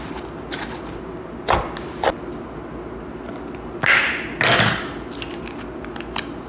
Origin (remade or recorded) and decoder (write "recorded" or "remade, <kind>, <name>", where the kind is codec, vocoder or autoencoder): recorded